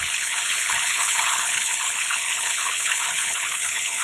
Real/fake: fake